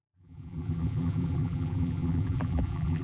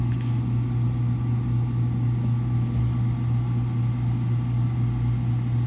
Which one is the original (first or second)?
second